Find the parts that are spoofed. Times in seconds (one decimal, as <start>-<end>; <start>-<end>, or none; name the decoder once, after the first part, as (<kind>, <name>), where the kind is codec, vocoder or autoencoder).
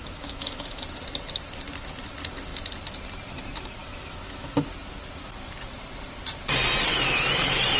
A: 0.0-0.8 (autoencoder, DAC-VAE); 3.8-4.7